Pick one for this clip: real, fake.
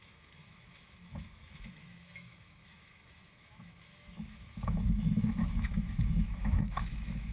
fake